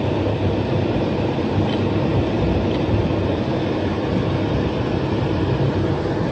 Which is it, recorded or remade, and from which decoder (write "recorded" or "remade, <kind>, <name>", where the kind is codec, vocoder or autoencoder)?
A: remade, vocoder, BigVGAN v2